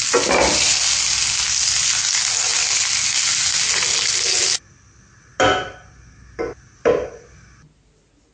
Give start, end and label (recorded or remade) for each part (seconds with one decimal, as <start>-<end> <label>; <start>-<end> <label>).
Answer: 0.0-8.3 recorded